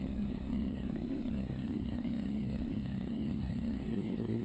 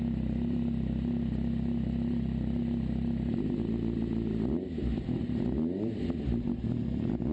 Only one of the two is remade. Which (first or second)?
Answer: first